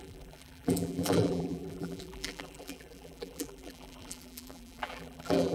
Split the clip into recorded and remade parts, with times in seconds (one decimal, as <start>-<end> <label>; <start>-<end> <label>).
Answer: 0.0-5.5 remade